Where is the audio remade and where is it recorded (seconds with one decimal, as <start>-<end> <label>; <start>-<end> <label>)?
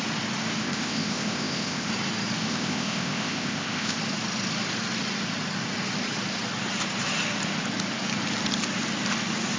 0.0-0.6 recorded; 0.6-1.9 remade; 1.9-2.4 recorded; 2.4-4.0 remade; 4.0-9.6 recorded